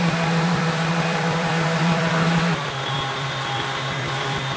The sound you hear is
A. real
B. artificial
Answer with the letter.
B